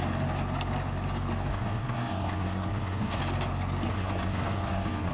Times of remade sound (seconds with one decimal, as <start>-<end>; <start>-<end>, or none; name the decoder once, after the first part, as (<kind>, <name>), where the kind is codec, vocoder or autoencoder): 1.5-3.2 (codec, SNAC); 3.9-5.1